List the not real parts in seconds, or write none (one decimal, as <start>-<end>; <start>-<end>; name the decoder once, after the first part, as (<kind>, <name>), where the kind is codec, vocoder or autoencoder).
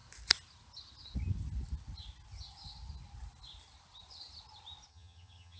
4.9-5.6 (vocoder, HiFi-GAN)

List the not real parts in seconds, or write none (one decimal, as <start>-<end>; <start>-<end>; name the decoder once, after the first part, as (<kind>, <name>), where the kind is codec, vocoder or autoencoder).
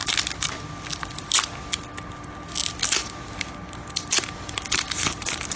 none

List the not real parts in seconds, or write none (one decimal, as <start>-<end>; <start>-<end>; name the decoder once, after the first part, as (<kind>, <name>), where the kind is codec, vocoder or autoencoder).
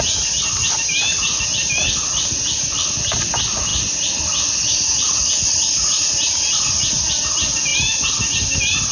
none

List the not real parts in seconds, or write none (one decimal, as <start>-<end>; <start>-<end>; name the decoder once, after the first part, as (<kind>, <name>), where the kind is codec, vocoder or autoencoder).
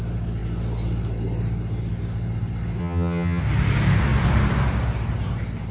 2.8-3.4 (vocoder, HiFi-GAN)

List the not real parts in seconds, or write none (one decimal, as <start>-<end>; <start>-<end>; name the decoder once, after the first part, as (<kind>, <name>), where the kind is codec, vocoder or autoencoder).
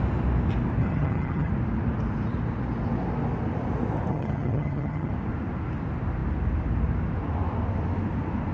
0.8-1.5 (vocoder, HiFi-GAN); 4.1-5.1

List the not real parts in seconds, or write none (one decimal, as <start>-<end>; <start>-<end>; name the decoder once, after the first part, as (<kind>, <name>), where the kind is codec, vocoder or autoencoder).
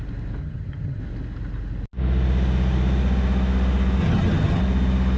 0.4-1.0 (vocoder, HiFi-GAN); 4.0-4.6